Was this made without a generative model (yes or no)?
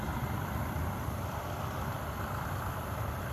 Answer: yes